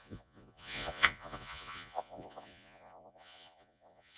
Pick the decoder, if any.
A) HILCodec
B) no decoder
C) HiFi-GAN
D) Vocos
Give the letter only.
D